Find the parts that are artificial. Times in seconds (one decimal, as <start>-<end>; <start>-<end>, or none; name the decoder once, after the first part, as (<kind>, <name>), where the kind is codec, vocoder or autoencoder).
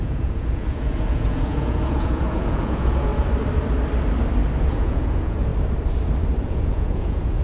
0.0-3.1 (vocoder, Vocos); 4.6-5.5; 6.4-7.4